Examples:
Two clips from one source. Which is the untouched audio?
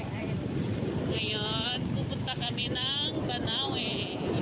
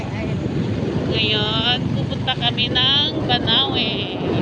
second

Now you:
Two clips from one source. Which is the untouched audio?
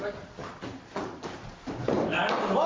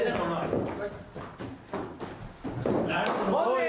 second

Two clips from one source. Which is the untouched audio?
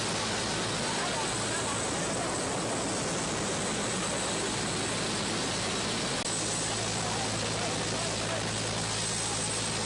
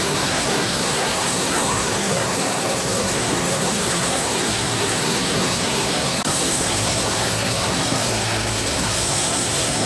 first